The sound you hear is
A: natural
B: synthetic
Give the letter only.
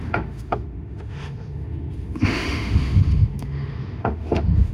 B